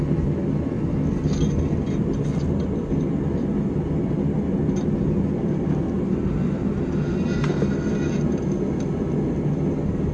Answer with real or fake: real